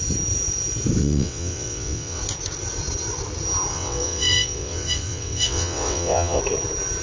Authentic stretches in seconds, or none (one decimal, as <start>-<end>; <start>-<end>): 0.0-1.0; 2.2-3.7; 6.4-7.0